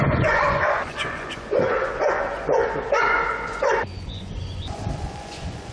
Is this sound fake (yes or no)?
yes